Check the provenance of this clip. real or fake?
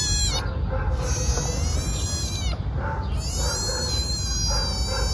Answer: real